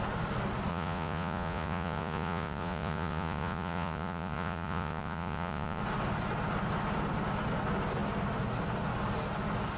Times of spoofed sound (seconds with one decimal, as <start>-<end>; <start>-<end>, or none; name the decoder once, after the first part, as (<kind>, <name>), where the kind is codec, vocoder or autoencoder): 0.7-5.8 (vocoder, Vocos)